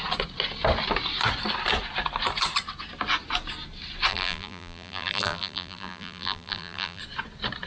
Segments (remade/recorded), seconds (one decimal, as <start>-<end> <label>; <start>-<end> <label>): 0.0-4.1 recorded; 4.1-7.0 remade; 7.0-7.7 recorded